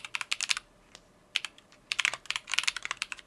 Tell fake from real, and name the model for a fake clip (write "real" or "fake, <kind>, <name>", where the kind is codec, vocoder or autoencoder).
real